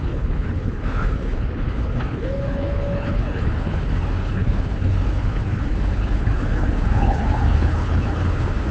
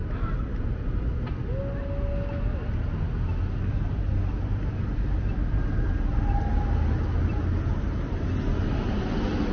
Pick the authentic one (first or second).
second